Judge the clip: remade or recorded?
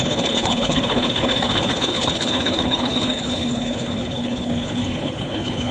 remade